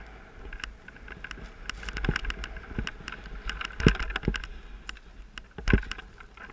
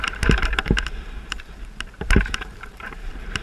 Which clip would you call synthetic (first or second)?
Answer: second